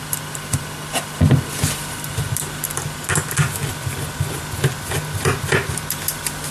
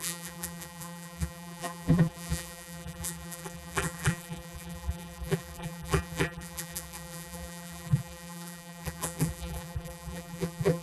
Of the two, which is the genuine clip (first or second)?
first